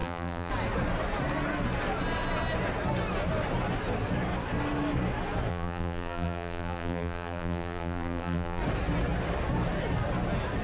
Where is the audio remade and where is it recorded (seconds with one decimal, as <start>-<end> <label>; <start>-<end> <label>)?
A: 0.0-0.5 remade; 0.5-5.5 recorded; 5.5-8.6 remade; 8.6-10.6 recorded